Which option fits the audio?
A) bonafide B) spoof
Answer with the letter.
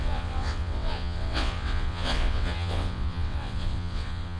B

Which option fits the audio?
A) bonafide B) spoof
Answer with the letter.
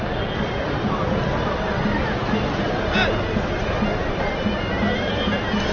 A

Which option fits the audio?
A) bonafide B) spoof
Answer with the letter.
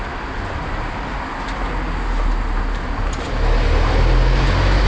A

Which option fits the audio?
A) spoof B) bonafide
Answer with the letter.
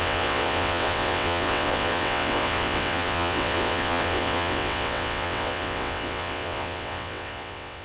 A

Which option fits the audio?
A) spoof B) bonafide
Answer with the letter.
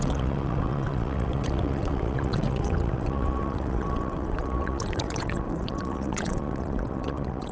A